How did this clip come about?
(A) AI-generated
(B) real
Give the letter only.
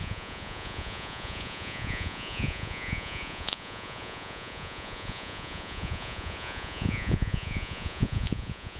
A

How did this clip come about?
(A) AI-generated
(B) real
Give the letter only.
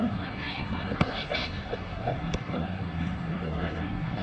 A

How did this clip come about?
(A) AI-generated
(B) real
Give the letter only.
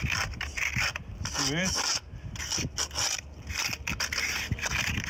A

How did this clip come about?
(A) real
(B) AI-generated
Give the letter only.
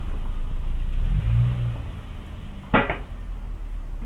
A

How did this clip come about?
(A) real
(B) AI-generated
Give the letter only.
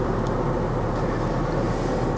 A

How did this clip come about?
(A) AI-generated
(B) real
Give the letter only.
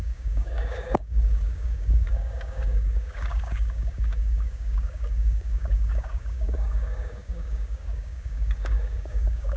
A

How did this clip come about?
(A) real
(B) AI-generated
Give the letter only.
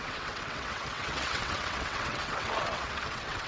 B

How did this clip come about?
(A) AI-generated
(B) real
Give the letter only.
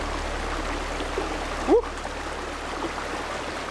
B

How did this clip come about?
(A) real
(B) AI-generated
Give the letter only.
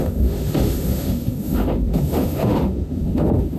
B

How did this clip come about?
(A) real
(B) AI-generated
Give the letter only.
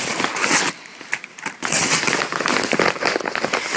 A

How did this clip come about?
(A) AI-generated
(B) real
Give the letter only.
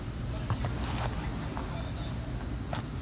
B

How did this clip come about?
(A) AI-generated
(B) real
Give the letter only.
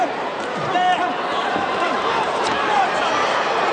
A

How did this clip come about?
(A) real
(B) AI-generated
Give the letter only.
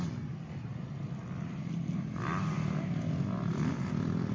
A